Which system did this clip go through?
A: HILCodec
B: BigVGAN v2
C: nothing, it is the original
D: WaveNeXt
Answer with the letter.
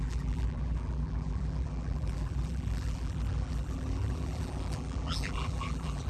B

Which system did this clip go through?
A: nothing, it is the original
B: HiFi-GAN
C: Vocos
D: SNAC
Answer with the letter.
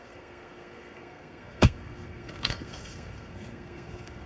D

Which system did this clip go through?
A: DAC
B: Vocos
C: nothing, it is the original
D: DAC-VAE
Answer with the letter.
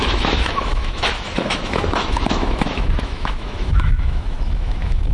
D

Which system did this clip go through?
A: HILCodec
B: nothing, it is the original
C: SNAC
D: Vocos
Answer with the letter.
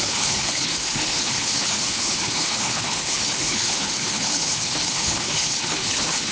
A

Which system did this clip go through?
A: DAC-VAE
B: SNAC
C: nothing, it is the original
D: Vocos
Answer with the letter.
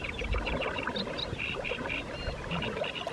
C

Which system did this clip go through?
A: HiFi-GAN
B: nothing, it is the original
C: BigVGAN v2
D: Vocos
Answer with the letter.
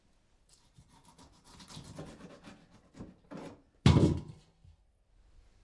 B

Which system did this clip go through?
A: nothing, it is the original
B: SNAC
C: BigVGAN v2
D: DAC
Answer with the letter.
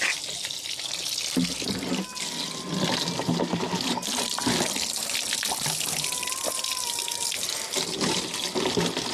A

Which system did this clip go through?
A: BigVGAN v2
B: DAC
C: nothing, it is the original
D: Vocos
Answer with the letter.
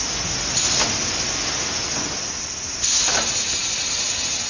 C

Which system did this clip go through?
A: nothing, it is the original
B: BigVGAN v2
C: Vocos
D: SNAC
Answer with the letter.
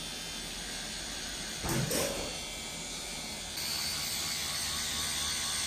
B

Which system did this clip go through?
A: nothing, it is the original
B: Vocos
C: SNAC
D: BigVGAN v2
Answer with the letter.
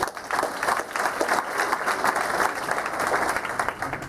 A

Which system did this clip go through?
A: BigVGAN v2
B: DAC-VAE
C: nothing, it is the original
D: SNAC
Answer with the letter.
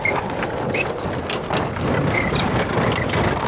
C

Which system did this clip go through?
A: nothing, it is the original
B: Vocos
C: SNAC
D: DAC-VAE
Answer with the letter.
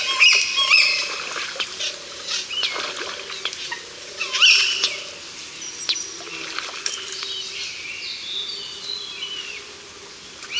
A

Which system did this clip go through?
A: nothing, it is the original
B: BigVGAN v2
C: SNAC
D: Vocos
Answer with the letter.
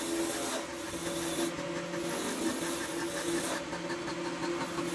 A